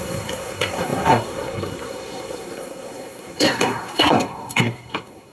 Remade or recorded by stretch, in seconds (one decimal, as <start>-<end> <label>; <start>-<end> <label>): 0.0-5.3 remade